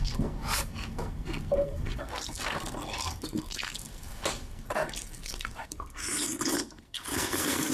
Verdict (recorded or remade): remade